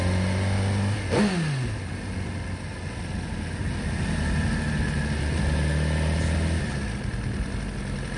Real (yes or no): yes